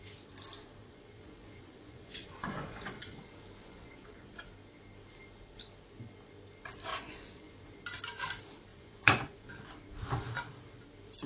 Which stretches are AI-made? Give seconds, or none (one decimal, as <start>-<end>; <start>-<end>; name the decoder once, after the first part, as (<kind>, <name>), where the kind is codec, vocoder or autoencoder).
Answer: 0.8-3.2 (vocoder, Vocos); 3.6-4.4; 6.9-7.6; 8.7-9.5